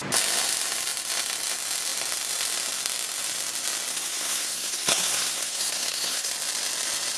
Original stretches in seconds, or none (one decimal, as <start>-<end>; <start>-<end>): 0.0-3.9; 6.3-7.2